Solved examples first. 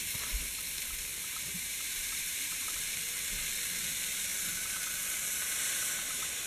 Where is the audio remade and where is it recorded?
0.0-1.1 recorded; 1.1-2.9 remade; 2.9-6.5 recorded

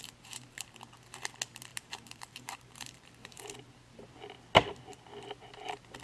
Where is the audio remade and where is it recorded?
0.0-1.7 recorded; 1.7-3.4 remade; 3.4-6.0 recorded

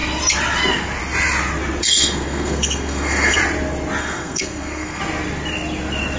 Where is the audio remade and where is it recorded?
0.0-1.8 recorded; 1.8-3.4 remade; 3.4-4.0 recorded; 4.0-5.0 remade; 5.0-6.2 recorded